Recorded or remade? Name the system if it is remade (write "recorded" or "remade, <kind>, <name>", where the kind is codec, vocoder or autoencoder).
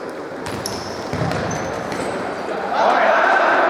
remade, vocoder, BigVGAN v2